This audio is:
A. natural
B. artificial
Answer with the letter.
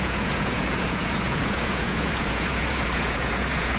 B